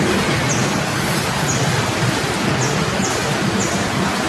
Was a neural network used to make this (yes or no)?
no